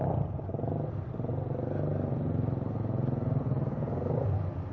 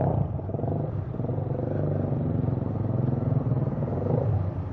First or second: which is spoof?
second